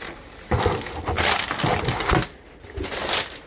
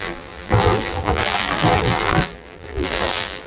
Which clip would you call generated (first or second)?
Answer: second